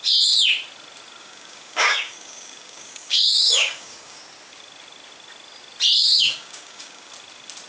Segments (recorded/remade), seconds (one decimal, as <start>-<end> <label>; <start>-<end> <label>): 0.0-1.2 recorded; 1.2-4.2 remade; 4.2-6.0 recorded; 6.0-7.1 remade; 7.1-7.7 recorded